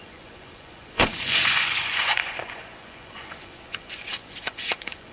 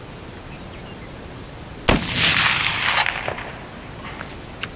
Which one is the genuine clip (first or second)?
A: second